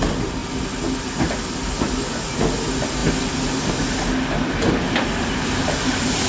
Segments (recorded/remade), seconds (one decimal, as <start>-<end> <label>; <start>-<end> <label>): 0.0-6.3 recorded